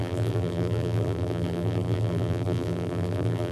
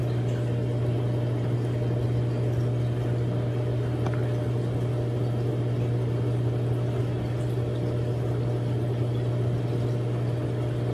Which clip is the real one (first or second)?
second